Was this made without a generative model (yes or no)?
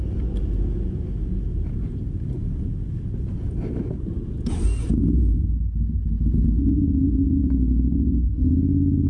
yes